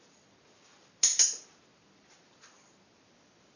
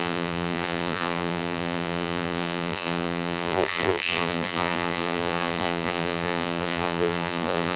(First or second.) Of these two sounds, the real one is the first